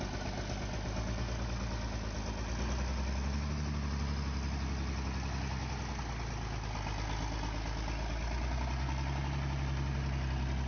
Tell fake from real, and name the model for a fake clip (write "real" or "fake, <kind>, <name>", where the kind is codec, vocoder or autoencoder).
real